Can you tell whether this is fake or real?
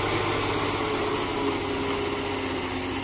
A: real